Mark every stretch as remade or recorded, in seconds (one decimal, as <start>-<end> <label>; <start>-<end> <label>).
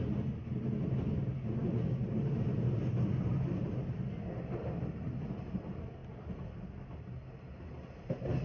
0.0-8.4 recorded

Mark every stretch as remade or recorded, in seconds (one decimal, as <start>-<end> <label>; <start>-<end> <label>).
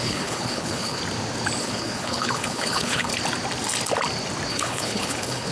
0.0-1.0 remade; 1.0-1.6 recorded; 1.6-3.1 remade; 3.1-4.5 recorded; 4.5-5.5 remade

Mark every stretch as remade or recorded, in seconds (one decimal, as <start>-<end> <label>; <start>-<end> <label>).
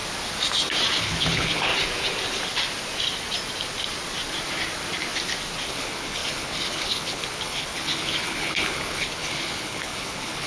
0.0-1.0 recorded; 1.0-1.7 remade; 1.7-5.7 recorded; 5.7-10.5 remade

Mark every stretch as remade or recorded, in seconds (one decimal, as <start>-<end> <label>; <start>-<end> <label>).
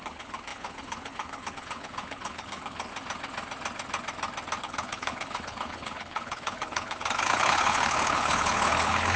0.0-2.9 remade; 2.9-4.6 recorded; 4.6-9.2 remade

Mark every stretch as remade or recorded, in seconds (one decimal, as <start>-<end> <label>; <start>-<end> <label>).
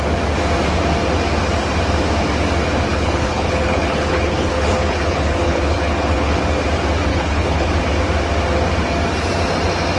0.0-2.9 recorded; 2.9-6.4 remade; 6.4-7.1 recorded; 7.1-7.7 remade; 7.7-10.0 recorded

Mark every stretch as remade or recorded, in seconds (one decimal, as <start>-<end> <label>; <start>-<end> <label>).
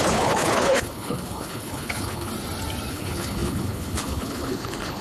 0.0-2.3 remade; 2.3-2.9 recorded; 2.9-5.0 remade